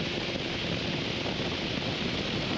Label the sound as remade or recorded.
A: recorded